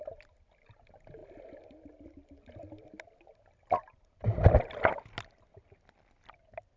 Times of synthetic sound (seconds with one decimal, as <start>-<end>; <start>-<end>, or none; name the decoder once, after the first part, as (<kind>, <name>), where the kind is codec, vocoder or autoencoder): none